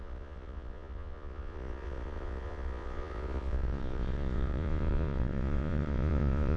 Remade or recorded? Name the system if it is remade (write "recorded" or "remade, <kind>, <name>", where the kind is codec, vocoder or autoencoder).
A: remade, vocoder, Vocos